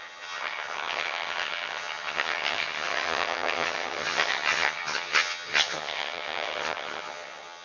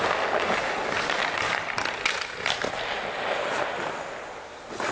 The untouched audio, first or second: second